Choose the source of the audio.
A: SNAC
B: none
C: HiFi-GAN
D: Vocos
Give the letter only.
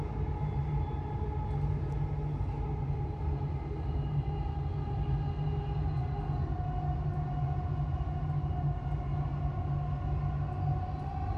B